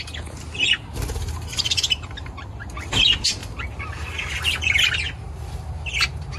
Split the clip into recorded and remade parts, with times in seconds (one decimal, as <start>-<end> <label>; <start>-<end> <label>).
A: 0.0-1.5 recorded; 1.5-2.5 remade; 2.5-6.4 recorded